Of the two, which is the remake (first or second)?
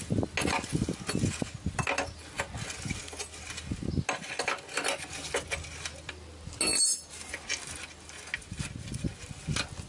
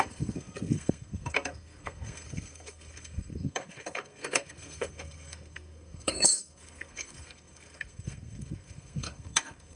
second